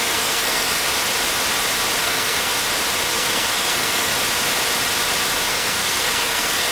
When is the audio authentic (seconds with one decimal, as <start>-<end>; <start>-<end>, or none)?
0.9-2.0; 2.5-3.1; 4.1-5.5